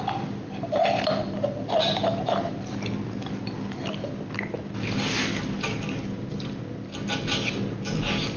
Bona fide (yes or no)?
yes